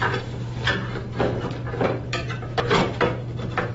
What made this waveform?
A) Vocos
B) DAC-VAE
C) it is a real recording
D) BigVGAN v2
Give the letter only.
D